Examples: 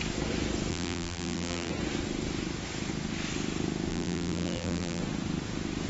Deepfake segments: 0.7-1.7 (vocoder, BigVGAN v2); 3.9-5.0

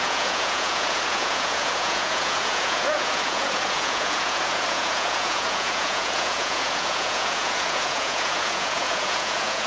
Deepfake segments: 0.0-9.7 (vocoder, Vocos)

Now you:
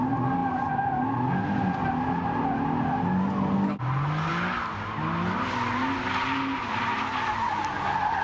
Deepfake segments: none

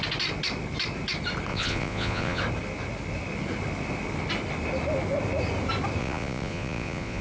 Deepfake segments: 1.5-2.4 (vocoder, Vocos); 6.0-7.2

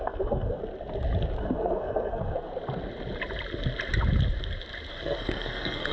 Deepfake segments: 0.0-0.6 (codec, SNAC); 1.4-2.5; 4.9-5.9

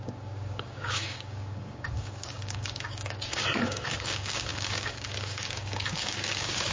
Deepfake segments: 0.0-6.7 (codec, DAC)

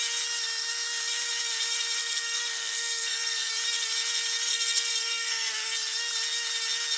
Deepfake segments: 2.0-3.5 (codec, SNAC); 4.5-5.5

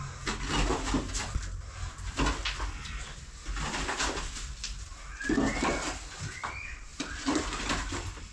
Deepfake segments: none